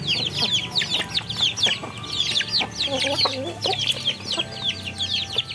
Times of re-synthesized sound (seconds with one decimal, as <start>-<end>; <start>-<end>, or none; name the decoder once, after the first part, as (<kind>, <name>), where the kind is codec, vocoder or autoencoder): none